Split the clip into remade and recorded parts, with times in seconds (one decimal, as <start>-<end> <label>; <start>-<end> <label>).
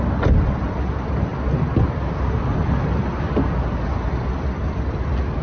0.0-5.4 recorded